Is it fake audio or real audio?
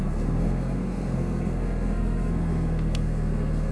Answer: fake